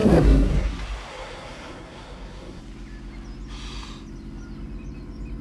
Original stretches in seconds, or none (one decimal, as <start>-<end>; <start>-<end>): 0.7-1.1; 2.6-5.4